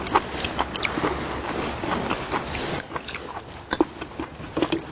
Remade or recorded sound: recorded